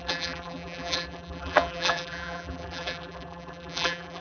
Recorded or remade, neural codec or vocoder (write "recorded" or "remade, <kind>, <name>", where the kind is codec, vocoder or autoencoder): remade, vocoder, BigVGAN v2